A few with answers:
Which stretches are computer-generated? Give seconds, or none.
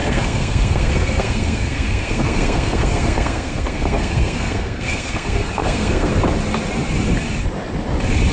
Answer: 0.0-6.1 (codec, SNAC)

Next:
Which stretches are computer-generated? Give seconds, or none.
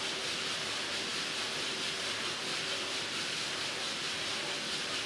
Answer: none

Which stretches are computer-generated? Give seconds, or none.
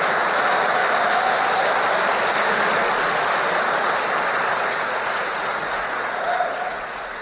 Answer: 0.0-0.8 (vocoder, Vocos); 4.5-7.2